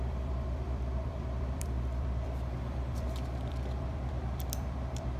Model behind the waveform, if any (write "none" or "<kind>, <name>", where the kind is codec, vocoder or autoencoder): vocoder, BigVGAN v2